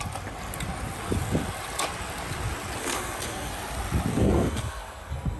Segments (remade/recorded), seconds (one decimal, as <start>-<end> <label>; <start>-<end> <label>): 0.0-2.8 recorded; 2.8-3.5 remade; 3.5-4.1 recorded; 4.1-5.4 remade